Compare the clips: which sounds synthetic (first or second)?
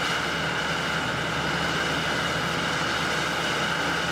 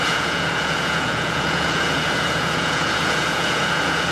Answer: second